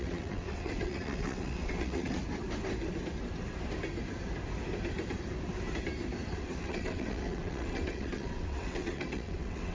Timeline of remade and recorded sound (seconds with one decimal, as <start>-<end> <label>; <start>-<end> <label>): 0.0-2.2 remade; 2.2-6.3 recorded; 6.3-9.7 remade